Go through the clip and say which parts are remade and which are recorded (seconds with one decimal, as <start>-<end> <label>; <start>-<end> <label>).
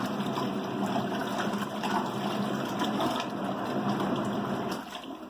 0.0-5.3 recorded